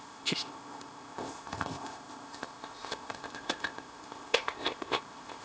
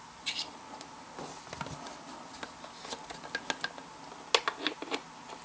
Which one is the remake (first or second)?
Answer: first